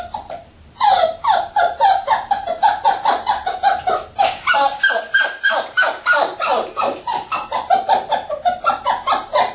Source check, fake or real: fake